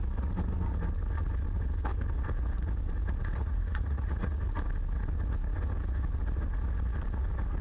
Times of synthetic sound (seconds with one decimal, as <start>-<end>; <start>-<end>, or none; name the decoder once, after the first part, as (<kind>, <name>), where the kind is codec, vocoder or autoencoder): 3.4-4.4 (vocoder, Vocos)